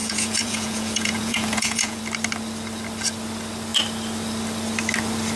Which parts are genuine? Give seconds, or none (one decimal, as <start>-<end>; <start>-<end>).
2.0-5.4